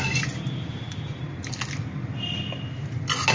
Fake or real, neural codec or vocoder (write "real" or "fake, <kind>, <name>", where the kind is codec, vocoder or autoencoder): real